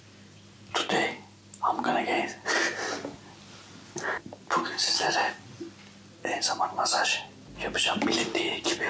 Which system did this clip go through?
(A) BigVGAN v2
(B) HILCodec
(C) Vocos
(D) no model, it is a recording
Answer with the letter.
D